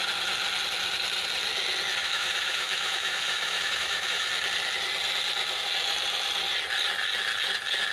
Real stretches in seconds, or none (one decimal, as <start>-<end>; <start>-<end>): 0.0-2.0; 4.3-7.9